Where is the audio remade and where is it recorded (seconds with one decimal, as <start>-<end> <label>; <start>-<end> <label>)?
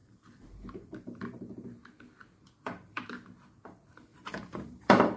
0.0-1.4 remade; 1.4-2.4 recorded; 2.4-3.0 remade; 3.0-4.1 recorded; 4.1-5.2 remade